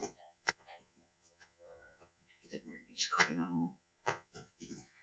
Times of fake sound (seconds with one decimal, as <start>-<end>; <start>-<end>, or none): 0.0-5.0